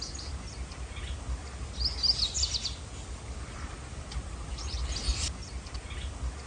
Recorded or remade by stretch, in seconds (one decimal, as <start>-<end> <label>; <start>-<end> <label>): 0.0-1.4 recorded; 1.4-4.0 remade; 4.0-5.1 recorded; 5.1-5.8 remade; 5.8-6.5 recorded